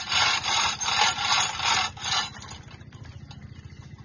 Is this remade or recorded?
recorded